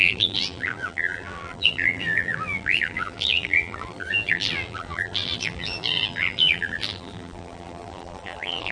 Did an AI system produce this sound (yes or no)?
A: yes